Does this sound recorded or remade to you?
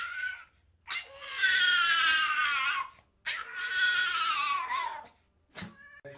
recorded